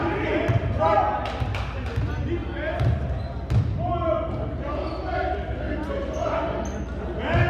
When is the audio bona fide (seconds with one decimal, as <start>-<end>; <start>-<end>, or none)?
0.0-7.5